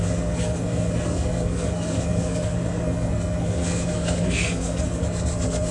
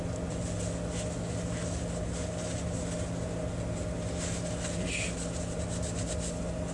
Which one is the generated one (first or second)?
first